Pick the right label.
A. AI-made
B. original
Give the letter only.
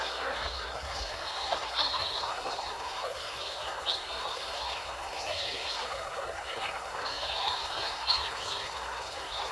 A